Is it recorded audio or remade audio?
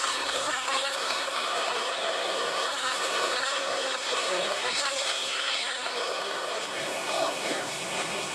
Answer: remade